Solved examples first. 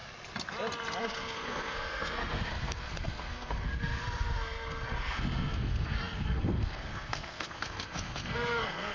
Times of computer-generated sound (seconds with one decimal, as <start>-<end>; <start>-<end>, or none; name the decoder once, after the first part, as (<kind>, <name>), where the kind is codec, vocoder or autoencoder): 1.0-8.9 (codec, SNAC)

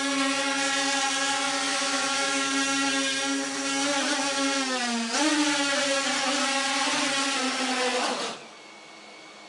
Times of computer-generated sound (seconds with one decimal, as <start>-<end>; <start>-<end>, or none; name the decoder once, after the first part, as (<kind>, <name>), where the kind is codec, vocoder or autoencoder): 1.7-2.5 (autoencoder, DAC-VAE)

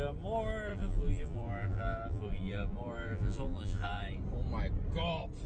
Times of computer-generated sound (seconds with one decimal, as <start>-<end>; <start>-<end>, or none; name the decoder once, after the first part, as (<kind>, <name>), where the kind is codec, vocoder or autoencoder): 0.7-4.0 (vocoder, BigVGAN v2)

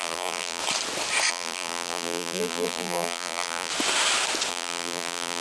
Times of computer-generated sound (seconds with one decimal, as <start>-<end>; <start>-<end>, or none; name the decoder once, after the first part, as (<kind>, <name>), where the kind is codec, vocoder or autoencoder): 0.0-0.6 (vocoder, BigVGAN v2); 1.3-3.7; 4.5-5.4

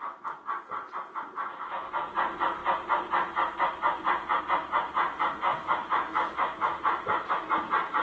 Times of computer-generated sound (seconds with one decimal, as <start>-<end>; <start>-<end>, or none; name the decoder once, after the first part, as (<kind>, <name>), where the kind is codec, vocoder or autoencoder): 1.4-1.9 (autoencoder, DAC-VAE); 5.5-7.3

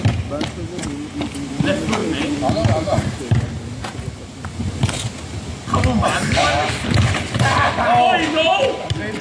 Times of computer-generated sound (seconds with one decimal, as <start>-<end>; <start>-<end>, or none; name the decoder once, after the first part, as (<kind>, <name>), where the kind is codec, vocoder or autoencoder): none